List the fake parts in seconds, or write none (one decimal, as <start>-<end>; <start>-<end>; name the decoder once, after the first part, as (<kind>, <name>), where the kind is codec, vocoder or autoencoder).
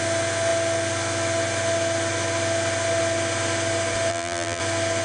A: 4.1-4.6 (vocoder, BigVGAN v2)